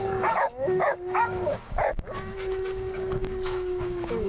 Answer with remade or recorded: remade